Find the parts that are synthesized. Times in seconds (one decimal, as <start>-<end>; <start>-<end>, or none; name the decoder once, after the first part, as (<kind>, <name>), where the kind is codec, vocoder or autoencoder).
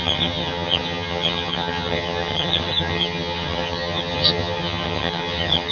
0.0-5.7 (vocoder, HiFi-GAN)